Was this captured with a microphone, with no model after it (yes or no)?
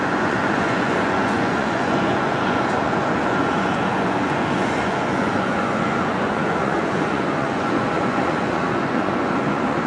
no